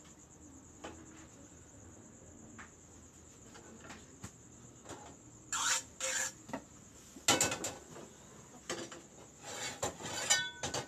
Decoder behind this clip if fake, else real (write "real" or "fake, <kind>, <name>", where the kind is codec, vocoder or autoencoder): real